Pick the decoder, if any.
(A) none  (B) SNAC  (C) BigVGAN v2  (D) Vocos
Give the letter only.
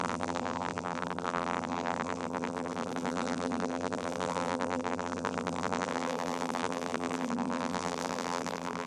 C